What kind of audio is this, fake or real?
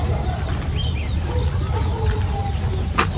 fake